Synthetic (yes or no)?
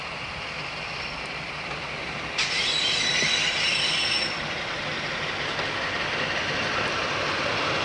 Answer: no